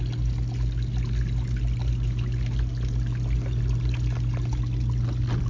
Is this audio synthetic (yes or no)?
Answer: no